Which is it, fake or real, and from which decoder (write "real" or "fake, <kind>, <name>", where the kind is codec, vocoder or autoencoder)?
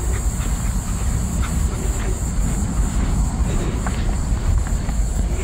real